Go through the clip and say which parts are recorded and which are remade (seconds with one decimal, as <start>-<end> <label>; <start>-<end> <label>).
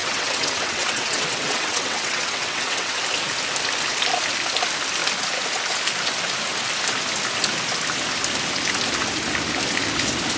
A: 0.0-3.0 remade; 3.0-10.4 recorded